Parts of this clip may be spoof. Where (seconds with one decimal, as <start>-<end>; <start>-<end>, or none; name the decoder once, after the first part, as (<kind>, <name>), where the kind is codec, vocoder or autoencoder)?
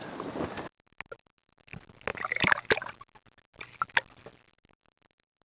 2.1-3.0 (vocoder, BigVGAN v2)